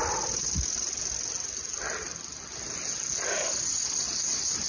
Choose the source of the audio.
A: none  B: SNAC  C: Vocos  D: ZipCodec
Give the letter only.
A